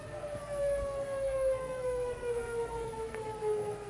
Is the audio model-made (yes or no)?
yes